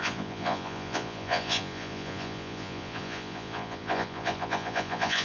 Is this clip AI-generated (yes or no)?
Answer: yes